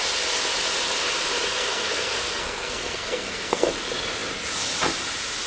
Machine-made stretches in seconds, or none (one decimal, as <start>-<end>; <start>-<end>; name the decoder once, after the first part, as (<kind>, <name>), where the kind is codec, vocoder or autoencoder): 1.5-3.7 (codec, SNAC)